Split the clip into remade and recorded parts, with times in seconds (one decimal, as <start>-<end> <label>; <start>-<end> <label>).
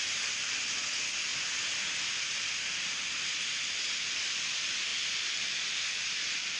0.0-6.6 recorded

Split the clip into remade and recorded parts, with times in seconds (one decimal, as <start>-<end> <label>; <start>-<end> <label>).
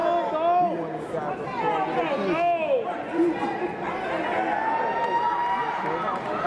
0.0-6.5 recorded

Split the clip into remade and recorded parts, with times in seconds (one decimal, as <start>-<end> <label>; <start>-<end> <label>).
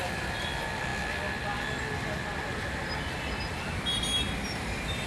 0.0-5.1 recorded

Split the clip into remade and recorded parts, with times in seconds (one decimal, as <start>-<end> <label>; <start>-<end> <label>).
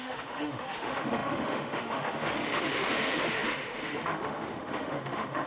0.0-5.5 remade